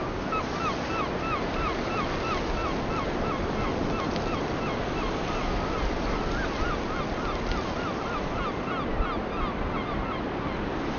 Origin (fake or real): real